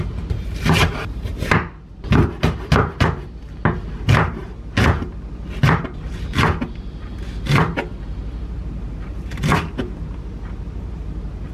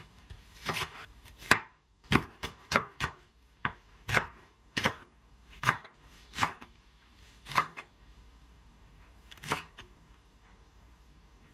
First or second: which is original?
first